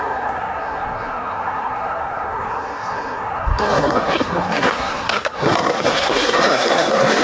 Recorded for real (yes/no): no